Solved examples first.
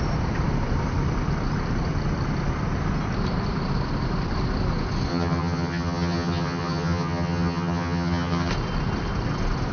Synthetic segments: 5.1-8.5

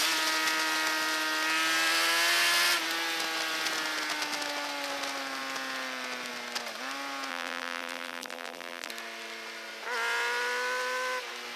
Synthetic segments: 7.3-8.9

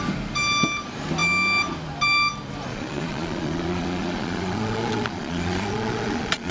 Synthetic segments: 2.7-6.5

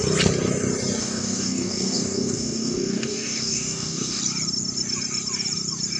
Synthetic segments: 1.0-4.2